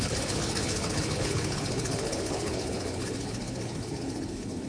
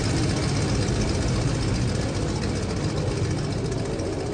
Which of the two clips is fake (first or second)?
first